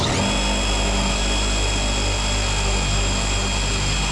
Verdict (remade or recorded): recorded